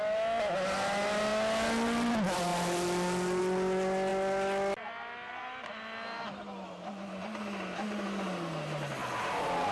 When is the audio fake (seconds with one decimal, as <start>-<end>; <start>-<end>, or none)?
none